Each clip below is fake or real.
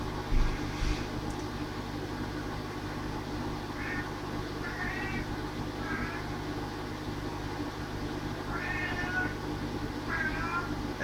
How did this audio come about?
real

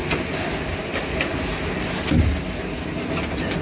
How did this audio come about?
real